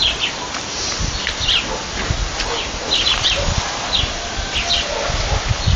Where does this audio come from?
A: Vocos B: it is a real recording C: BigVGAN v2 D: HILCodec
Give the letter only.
B